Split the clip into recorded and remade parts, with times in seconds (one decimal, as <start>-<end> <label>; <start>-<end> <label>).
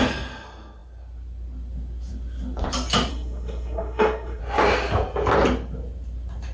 0.0-3.1 recorded; 3.1-4.4 remade; 4.4-6.5 recorded